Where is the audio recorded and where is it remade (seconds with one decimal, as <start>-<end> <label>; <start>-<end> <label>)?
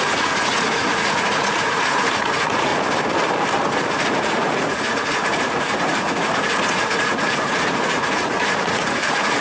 0.0-2.7 remade; 2.7-4.1 recorded; 4.1-9.4 remade